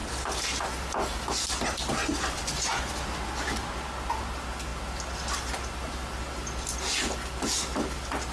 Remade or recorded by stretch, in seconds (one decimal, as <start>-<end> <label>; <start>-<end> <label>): 0.0-2.4 recorded; 2.4-2.9 remade; 2.9-8.3 recorded